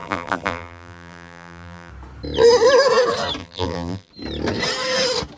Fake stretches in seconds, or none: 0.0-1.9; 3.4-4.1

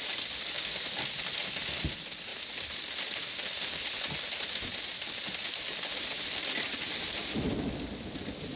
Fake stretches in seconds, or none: 2.3-2.8

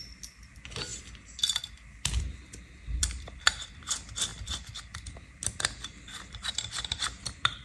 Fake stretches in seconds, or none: 0.0-0.9; 1.6-7.6